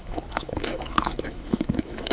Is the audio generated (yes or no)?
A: yes